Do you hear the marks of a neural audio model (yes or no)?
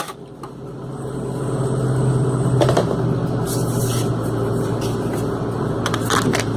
no